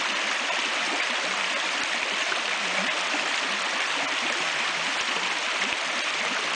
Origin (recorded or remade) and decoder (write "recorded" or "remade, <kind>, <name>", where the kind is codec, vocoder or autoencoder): recorded